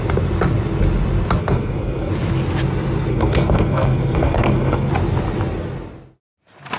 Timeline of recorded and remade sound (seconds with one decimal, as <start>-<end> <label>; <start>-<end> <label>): 0.0-1.4 recorded; 1.4-2.1 remade; 2.1-3.1 recorded; 3.1-4.9 remade; 4.9-6.8 recorded